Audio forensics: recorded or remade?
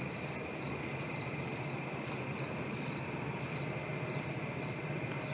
recorded